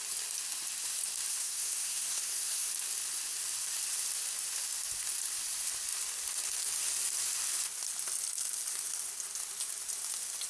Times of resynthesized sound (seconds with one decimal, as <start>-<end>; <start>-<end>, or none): 1.3-2.7